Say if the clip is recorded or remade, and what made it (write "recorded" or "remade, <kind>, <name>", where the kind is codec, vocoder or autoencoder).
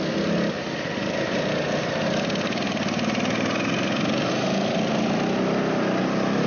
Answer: recorded